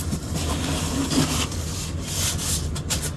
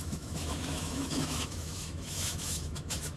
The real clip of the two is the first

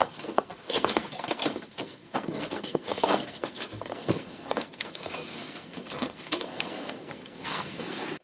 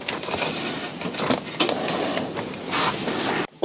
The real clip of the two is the second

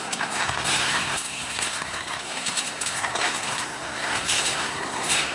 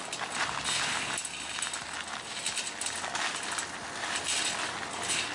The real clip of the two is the second